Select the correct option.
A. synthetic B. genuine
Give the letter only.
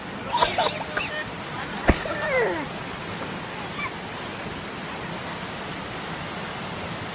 B